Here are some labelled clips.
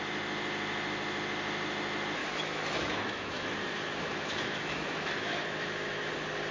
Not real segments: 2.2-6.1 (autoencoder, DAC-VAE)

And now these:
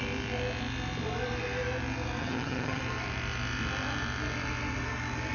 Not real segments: 2.2-2.8 (vocoder, HiFi-GAN)